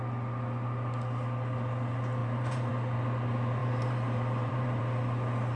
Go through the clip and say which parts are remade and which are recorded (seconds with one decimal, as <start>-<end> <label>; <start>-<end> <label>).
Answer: 0.0-2.2 recorded; 2.2-2.7 remade; 2.7-3.6 recorded; 3.6-4.8 remade; 4.8-5.6 recorded